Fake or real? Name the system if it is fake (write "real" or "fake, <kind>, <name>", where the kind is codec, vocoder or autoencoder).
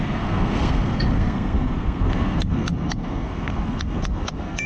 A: fake, codec, SNAC